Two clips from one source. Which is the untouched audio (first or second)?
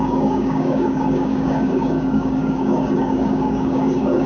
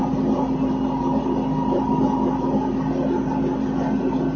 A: second